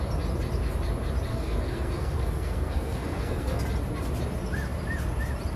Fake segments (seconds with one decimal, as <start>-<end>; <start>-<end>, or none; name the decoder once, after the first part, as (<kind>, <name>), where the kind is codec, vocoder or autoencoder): 1.3-3.6 (codec, SNAC)